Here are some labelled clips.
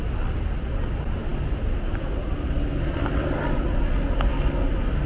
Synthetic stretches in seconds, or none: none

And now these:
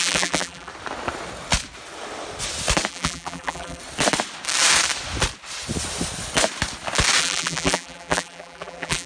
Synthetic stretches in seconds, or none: 0.0-0.7; 2.9-3.8; 7.2-9.1

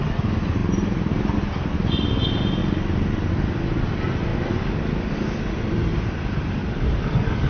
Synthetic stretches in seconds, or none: 0.6-1.1; 6.6-7.1

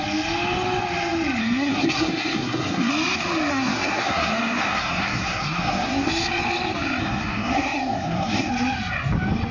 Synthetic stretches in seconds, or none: 1.4-2.9; 3.5-6.1; 7.0-8.5

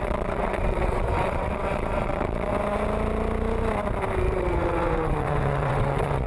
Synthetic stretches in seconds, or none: 0.0-2.5; 4.4-6.3

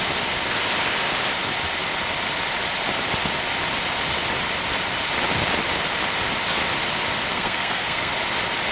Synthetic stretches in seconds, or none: 7.3-8.1

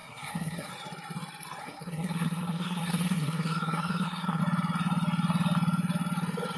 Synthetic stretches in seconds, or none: 0.0-0.7; 1.6-4.4